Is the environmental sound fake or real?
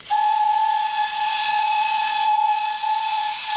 fake